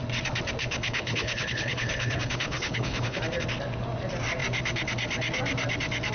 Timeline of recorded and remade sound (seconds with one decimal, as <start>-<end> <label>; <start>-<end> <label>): 0.0-0.6 recorded; 0.6-3.2 remade; 3.2-6.1 recorded